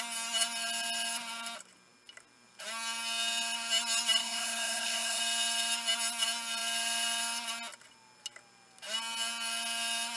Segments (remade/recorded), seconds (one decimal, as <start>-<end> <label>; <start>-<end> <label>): 0.0-4.2 recorded; 4.2-5.2 remade; 5.2-10.2 recorded